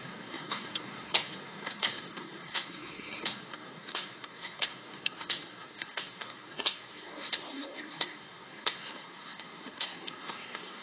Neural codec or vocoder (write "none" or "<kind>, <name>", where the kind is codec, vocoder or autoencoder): codec, SNAC